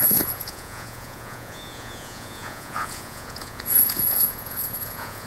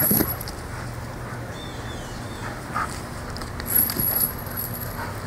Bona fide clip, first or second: second